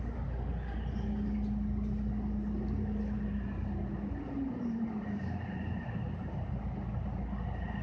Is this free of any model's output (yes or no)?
yes